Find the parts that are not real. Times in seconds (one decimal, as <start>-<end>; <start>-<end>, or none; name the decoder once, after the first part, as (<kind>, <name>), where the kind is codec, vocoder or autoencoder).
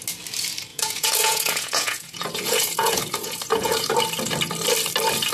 0.7-3.9 (vocoder, Vocos)